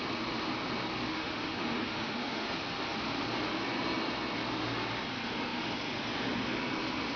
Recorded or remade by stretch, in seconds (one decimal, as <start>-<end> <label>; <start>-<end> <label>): 0.0-1.1 recorded; 1.1-2.5 remade; 2.5-7.2 recorded